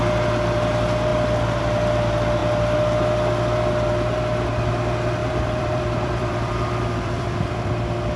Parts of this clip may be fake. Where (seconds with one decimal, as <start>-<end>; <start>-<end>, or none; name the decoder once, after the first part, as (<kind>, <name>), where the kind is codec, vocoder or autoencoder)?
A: 1.1-1.6 (vocoder, BigVGAN v2); 5.2-7.7